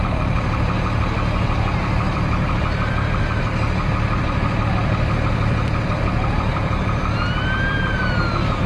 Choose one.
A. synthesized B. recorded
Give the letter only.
B